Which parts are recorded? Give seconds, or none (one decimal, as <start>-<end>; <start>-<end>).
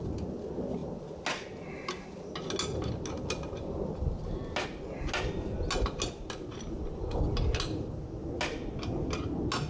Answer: 0.0-9.7